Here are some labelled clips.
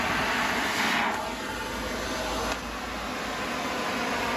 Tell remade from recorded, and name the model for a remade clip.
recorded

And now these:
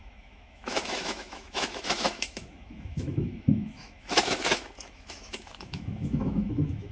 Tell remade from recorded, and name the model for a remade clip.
remade, autoencoder, DAC-VAE